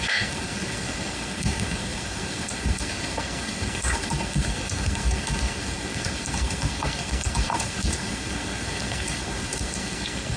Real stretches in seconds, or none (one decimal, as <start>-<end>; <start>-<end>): none